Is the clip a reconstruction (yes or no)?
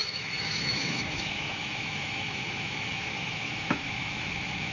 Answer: yes